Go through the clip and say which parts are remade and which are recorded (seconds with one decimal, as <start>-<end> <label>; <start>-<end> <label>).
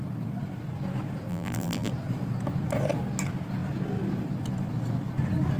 0.0-1.3 recorded; 1.3-1.9 remade; 1.9-5.6 recorded